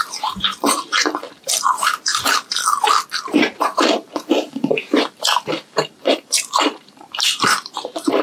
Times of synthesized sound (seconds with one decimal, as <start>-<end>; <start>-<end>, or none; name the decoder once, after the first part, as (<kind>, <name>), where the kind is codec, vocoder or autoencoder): 0.0-2.6 (vocoder, BigVGAN v2); 3.2-8.2